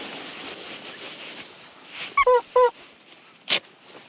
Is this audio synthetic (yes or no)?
no